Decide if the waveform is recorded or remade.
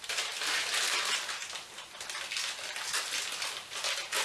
recorded